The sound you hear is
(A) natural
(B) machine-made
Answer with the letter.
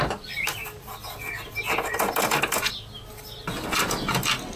A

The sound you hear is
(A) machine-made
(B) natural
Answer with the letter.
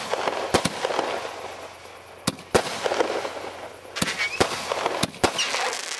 B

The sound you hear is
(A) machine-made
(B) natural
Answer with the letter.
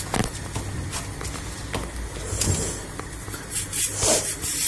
B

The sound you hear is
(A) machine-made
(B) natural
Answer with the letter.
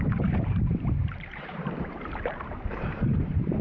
A